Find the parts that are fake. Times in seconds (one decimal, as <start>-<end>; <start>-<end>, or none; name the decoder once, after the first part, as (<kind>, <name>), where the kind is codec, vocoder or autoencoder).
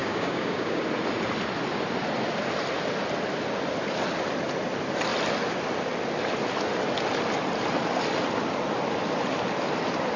0.0-0.8 (codec, DAC)